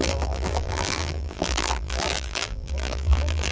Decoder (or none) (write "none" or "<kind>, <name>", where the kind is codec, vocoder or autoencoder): vocoder, BigVGAN v2